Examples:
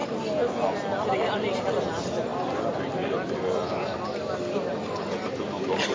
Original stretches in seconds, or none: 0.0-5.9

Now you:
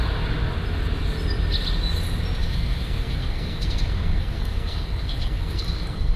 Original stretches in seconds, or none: 0.0-2.4

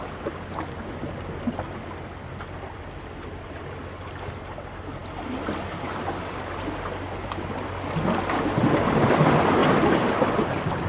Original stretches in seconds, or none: 0.0-10.9

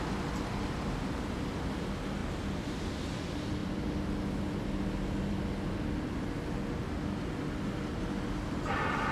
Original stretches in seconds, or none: 0.0-9.1

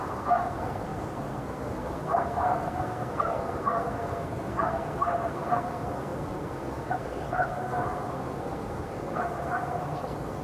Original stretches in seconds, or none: none